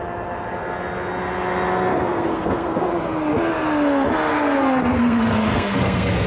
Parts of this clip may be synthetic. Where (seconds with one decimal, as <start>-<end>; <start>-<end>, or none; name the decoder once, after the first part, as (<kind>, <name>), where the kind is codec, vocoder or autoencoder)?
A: 1.9-2.9 (codec, SNAC); 4.3-6.3